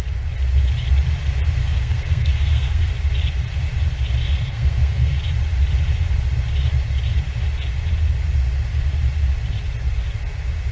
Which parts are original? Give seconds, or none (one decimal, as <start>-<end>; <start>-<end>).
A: 0.0-1.6; 2.9-4.3; 5.2-10.7